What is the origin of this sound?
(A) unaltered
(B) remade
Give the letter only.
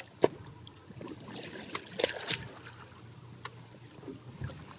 A